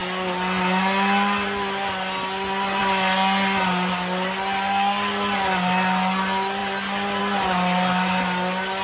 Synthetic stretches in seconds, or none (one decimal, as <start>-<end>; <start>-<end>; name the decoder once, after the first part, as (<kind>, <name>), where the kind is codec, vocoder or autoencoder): none